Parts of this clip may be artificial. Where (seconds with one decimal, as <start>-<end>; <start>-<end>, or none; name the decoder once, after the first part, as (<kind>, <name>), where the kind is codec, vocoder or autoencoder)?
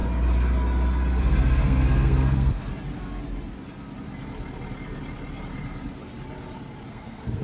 1.2-2.7 (codec, SNAC); 6.9-7.4